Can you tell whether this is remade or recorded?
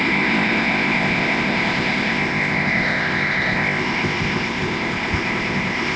remade